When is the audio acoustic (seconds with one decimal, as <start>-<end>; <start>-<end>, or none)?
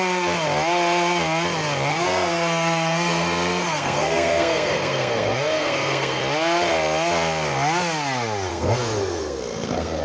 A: 0.0-1.9; 6.2-8.5